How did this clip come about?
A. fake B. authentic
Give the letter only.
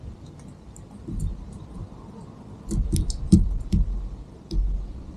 B